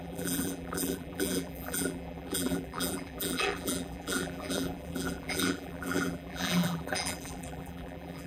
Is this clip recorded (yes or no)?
no